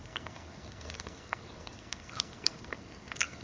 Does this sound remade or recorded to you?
remade